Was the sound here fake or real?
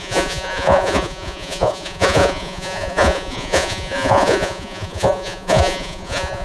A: fake